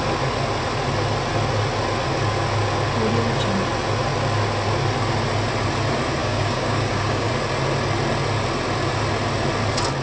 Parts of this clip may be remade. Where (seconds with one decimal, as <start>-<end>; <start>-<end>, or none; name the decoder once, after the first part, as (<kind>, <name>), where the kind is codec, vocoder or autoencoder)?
6.2-7.3 (codec, DAC)